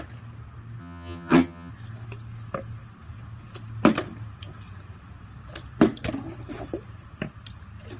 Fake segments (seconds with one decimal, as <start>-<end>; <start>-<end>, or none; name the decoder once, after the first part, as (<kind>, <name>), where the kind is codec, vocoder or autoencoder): 0.8-1.7 (vocoder, HiFi-GAN)